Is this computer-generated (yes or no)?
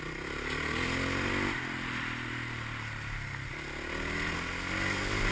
no